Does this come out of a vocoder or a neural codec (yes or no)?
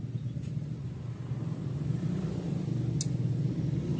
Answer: no